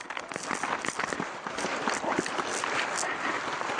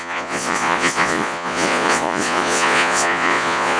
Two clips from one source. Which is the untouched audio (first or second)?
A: first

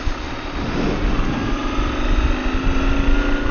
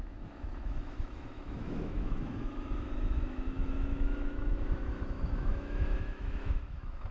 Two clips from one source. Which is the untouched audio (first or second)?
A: first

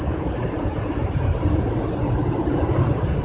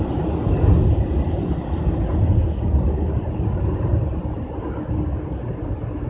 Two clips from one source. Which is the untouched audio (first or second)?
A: second